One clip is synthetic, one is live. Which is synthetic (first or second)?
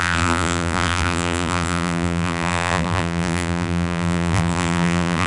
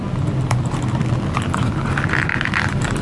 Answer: first